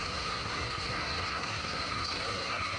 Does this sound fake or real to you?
fake